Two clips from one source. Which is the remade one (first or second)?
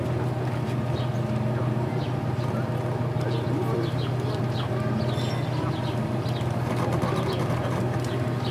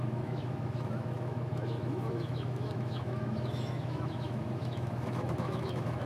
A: second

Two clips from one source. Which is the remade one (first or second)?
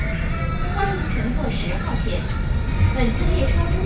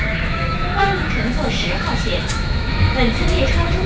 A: second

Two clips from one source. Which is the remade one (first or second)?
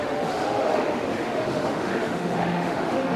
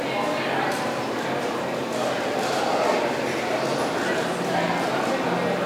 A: first